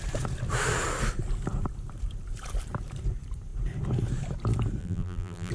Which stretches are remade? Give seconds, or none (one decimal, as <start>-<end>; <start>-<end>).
4.8-5.5